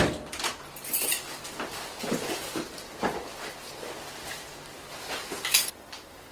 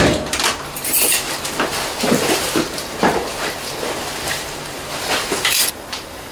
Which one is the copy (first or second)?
second